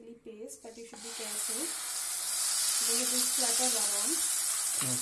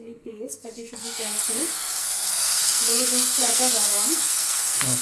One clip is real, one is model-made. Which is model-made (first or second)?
second